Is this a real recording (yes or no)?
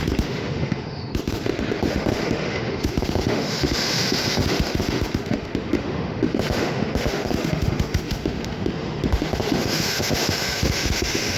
no